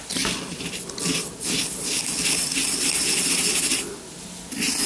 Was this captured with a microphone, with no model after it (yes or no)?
yes